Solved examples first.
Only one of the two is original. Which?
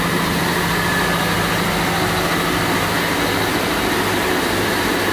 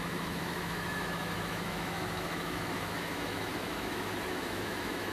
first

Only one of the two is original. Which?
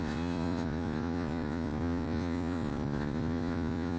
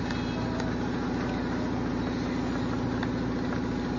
second